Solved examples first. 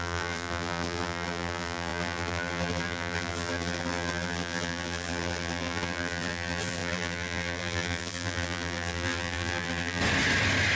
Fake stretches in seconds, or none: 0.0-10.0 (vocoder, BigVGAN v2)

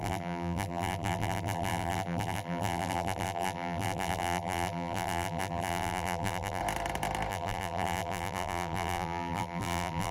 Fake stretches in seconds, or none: 0.0-6.6 (vocoder, BigVGAN v2); 7.3-10.1

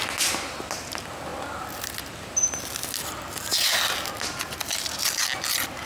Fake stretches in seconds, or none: none